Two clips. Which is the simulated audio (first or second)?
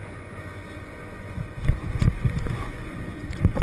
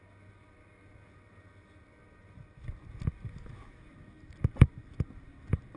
first